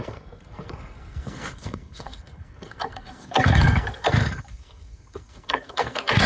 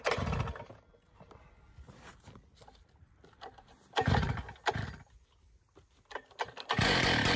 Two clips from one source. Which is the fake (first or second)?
first